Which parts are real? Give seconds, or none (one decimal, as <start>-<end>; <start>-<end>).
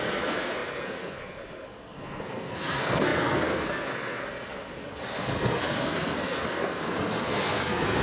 none